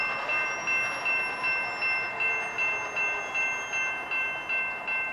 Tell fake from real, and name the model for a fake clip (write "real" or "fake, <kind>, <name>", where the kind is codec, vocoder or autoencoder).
real